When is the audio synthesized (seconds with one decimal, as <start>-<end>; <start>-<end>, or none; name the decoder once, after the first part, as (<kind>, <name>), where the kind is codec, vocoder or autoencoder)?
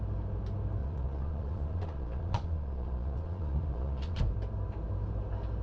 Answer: 0.8-4.2 (vocoder, Vocos)